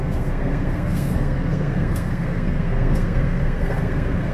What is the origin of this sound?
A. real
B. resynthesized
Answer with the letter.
B